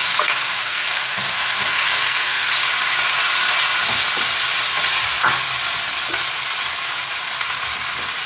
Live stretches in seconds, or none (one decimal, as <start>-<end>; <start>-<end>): 2.5-8.3